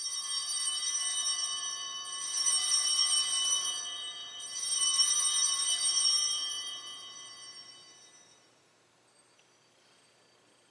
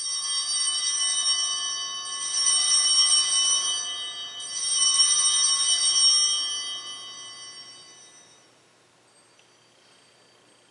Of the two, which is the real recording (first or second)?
second